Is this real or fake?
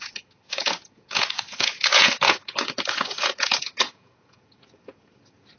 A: fake